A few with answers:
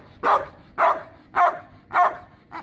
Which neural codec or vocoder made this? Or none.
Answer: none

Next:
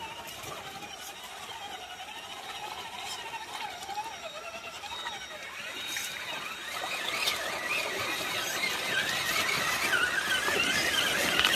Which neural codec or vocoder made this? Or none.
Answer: none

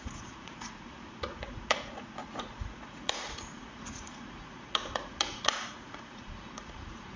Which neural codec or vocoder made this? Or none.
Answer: vocoder, Vocos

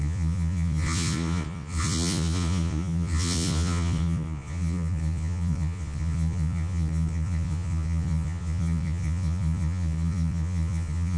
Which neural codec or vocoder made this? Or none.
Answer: vocoder, Vocos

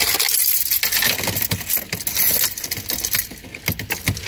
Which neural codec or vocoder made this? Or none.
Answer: none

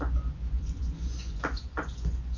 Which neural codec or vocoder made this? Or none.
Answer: vocoder, Vocos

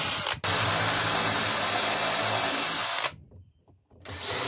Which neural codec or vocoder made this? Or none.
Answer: none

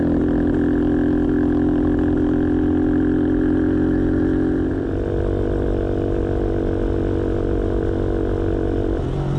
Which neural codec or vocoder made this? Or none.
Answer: none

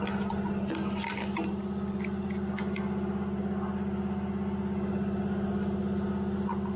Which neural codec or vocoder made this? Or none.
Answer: none